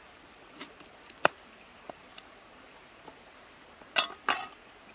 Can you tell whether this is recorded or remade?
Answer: recorded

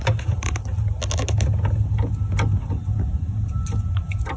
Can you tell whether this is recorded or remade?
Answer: recorded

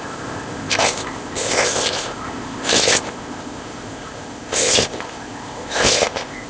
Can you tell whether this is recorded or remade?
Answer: remade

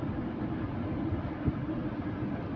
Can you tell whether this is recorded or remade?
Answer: recorded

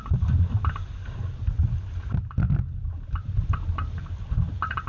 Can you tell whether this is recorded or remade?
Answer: recorded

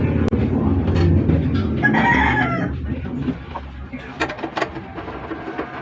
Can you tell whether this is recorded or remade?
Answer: recorded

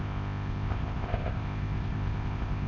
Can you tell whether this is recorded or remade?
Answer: remade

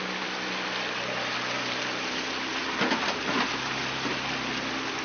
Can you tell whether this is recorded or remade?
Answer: recorded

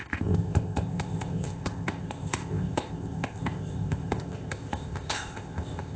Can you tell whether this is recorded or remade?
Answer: remade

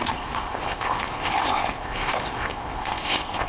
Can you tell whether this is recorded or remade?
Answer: remade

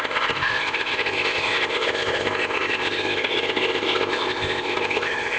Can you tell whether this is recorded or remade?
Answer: remade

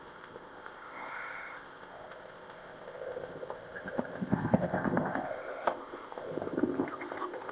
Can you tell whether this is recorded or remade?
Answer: remade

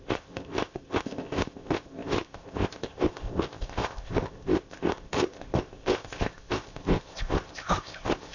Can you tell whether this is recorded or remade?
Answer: remade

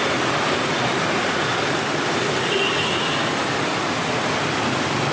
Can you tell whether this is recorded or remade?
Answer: recorded